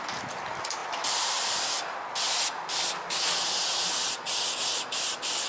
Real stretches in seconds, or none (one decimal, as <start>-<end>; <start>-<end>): 0.0-5.5